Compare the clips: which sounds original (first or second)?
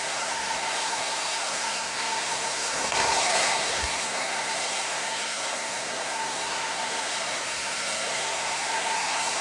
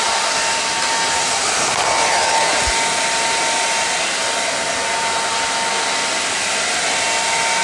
second